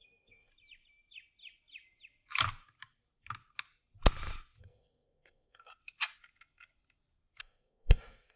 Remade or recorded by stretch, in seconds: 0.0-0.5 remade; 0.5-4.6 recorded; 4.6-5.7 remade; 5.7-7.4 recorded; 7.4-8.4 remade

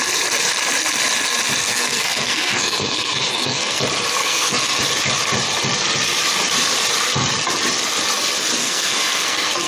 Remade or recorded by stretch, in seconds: 0.0-1.6 recorded; 1.6-3.8 remade; 3.8-4.2 recorded; 4.2-4.8 remade; 4.8-8.6 recorded; 8.6-9.7 remade

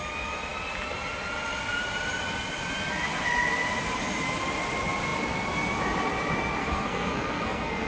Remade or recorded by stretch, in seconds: 0.0-6.6 recorded; 6.6-7.9 remade

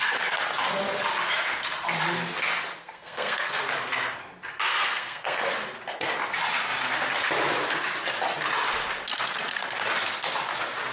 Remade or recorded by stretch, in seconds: 0.0-2.8 recorded; 2.8-3.6 remade; 3.6-4.7 recorded; 4.7-5.5 remade; 5.5-10.9 recorded

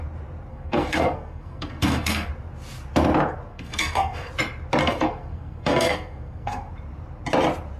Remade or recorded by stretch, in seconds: 0.0-0.5 recorded; 0.5-2.3 remade; 2.3-3.5 recorded; 3.5-4.3 remade; 4.3-4.8 recorded; 4.8-6.7 remade; 6.7-7.8 recorded

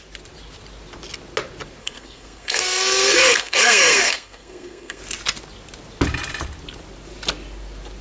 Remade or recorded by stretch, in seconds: 0.0-1.8 recorded; 1.8-5.0 remade; 5.0-8.0 recorded